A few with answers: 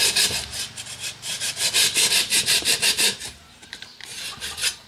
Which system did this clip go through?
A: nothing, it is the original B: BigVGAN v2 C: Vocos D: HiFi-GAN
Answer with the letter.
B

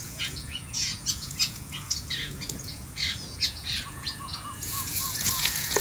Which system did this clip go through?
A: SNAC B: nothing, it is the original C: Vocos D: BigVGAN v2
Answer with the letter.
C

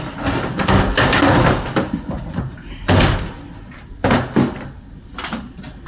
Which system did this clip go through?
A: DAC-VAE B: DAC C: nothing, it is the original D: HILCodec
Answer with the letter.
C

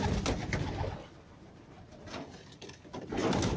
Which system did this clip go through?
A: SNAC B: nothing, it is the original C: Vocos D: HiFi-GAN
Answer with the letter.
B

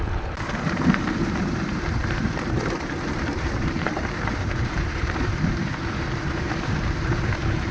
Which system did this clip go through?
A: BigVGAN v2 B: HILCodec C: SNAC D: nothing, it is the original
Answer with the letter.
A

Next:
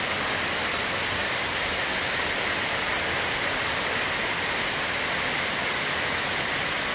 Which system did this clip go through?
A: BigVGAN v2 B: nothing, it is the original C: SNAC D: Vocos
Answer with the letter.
B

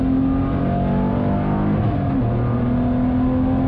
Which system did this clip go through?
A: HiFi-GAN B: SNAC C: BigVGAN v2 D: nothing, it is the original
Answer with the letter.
D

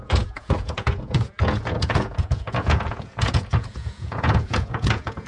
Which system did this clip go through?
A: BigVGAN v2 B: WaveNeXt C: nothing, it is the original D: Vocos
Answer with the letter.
D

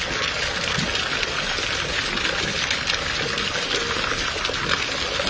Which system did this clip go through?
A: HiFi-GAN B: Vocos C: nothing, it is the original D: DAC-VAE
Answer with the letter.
C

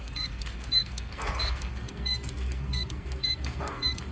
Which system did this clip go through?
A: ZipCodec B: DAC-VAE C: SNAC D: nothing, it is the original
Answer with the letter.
C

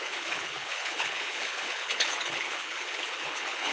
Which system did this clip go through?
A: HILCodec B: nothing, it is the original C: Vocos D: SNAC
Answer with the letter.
A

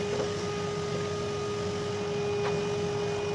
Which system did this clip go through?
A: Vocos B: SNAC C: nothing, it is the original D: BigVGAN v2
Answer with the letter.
C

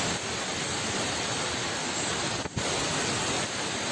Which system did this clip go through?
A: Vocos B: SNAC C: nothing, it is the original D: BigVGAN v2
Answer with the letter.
C